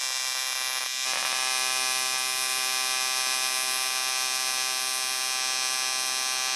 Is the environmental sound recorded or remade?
recorded